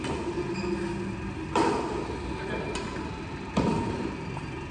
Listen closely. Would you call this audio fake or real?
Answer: real